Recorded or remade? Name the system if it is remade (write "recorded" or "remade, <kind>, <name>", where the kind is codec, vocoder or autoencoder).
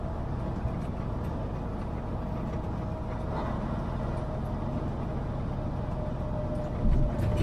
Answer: recorded